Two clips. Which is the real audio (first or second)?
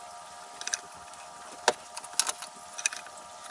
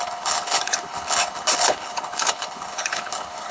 first